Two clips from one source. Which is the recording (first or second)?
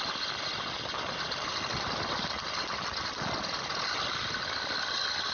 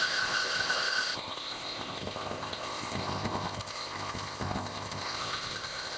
first